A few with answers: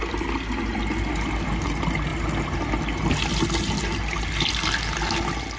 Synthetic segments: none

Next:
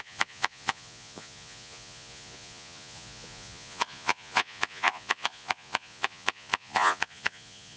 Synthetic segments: 0.0-7.8 (vocoder, Vocos)

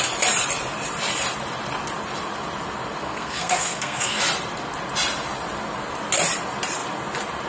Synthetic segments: 3.0-4.2 (codec, SNAC)